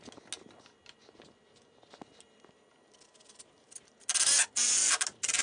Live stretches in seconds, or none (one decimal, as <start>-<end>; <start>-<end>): 0.0-5.4